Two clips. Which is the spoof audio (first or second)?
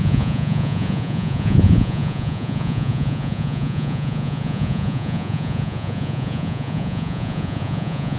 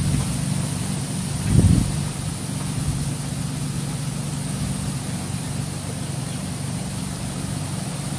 first